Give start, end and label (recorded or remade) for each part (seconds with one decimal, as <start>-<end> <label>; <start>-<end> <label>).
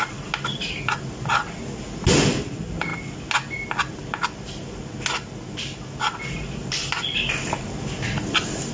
0.0-8.7 recorded